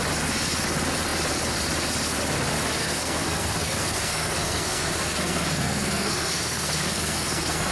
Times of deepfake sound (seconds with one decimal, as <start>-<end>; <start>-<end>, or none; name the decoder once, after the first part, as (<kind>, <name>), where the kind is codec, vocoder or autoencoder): 2.8-7.7 (codec, SNAC)